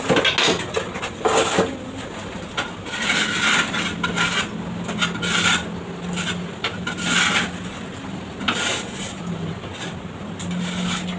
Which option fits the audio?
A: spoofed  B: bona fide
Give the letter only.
B